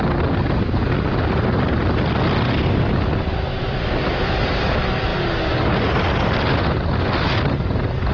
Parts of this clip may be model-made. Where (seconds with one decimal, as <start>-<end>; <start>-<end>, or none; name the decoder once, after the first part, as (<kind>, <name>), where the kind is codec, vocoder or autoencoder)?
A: 3.5-4.4 (vocoder, BigVGAN v2)